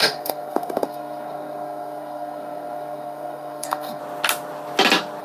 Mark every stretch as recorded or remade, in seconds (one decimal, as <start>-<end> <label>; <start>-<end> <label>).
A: 0.0-4.0 remade; 4.0-5.2 recorded